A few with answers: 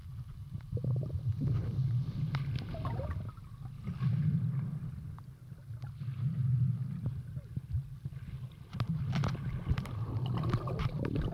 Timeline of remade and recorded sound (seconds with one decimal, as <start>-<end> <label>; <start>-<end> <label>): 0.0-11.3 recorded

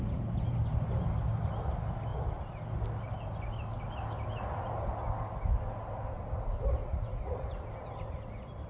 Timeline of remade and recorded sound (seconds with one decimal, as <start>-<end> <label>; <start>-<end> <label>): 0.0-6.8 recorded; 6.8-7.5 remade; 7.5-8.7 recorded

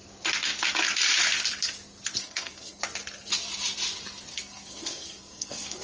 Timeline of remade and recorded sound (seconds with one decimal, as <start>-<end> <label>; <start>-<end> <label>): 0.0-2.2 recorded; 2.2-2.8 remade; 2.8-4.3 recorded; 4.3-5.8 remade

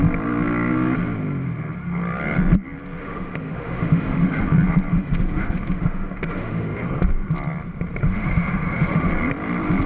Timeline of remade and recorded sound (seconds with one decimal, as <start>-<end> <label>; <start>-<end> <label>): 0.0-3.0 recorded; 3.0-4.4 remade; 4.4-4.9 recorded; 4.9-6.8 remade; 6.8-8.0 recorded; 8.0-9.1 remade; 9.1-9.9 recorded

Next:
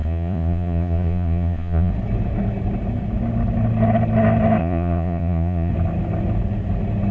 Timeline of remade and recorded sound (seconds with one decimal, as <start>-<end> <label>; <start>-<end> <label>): 0.0-1.9 remade; 1.9-4.6 recorded; 4.6-5.7 remade; 5.7-7.1 recorded